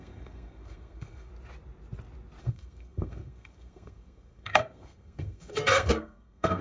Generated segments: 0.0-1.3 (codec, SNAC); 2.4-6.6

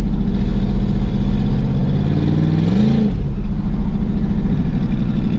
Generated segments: none

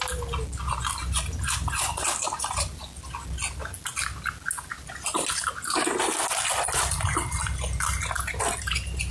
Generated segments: none